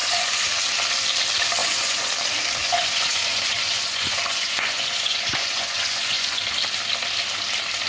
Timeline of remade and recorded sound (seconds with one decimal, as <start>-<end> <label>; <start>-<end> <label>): 0.0-0.5 remade; 0.5-1.6 recorded; 1.6-2.1 remade; 2.1-2.6 recorded; 2.6-6.4 remade; 6.4-7.9 recorded